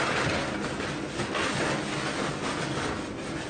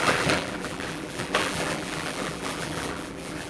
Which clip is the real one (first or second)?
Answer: first